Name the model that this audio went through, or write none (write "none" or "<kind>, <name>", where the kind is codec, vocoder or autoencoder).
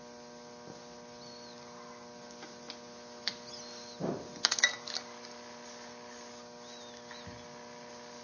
none